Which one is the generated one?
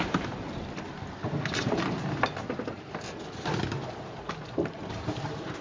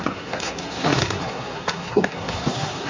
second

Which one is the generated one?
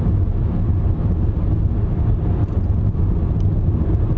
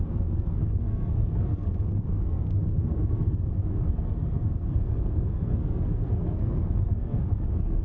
second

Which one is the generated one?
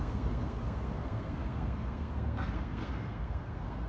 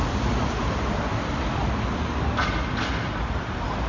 first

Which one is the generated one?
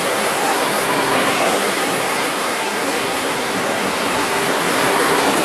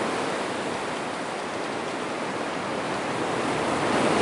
first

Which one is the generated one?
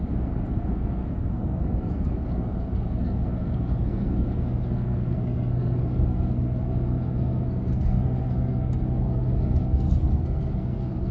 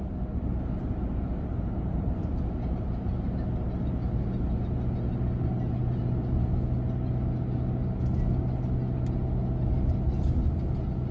first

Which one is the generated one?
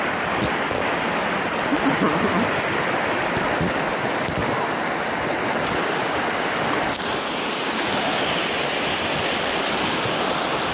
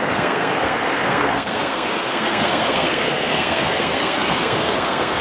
second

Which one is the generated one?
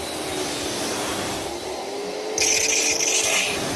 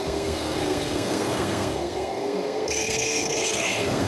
second